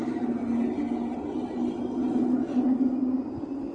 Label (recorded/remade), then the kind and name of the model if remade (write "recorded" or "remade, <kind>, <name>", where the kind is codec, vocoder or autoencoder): recorded